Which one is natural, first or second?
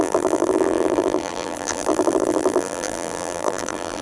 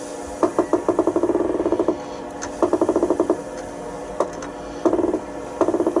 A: second